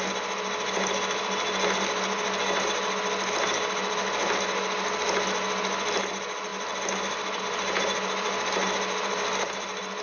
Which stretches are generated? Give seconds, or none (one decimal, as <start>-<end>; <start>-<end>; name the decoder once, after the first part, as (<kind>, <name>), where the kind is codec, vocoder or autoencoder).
none